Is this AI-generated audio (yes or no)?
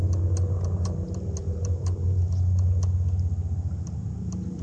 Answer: no